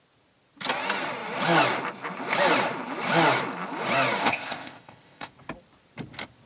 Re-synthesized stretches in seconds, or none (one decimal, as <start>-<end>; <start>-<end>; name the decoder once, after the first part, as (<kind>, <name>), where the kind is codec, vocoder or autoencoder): 4.2-5.3 (codec, ZipCodec)